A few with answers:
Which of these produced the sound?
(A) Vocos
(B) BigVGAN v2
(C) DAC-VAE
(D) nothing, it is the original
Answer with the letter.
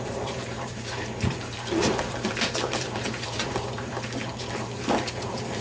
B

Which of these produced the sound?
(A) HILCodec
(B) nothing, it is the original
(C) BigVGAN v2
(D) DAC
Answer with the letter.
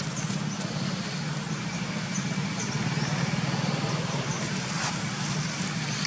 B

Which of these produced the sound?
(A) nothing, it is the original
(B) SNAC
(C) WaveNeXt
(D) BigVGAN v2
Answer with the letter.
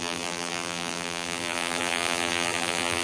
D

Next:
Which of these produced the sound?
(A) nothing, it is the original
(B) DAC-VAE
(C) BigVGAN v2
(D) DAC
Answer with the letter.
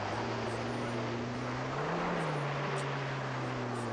A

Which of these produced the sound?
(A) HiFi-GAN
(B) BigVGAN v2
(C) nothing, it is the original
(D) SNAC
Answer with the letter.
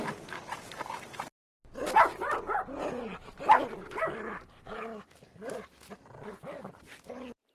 C